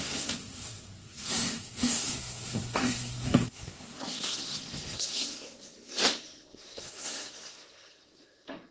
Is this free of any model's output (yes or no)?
no